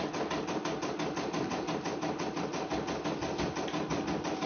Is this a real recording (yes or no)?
yes